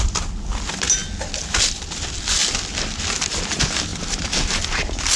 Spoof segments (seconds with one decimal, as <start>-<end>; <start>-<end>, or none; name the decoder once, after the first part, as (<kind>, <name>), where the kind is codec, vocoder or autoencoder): none